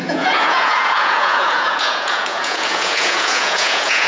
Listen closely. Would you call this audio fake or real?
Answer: fake